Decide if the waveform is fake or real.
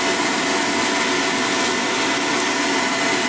real